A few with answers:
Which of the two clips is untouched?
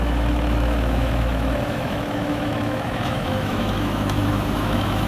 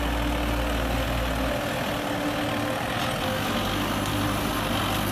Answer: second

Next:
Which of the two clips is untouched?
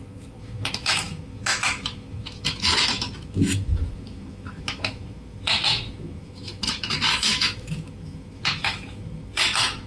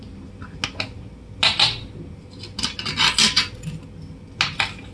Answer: second